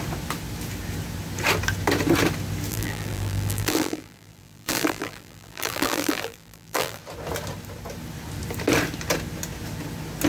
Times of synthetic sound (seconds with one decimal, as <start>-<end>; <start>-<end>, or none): 2.7-7.0